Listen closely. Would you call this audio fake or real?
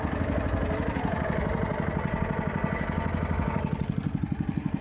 real